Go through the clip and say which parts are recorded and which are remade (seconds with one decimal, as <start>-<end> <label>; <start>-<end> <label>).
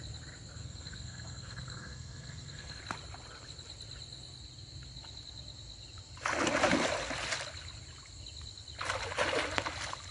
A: 0.0-0.6 recorded; 0.6-2.8 remade; 2.8-10.1 recorded